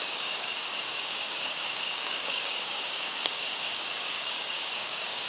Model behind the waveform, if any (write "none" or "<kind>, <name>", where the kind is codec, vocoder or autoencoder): codec, DAC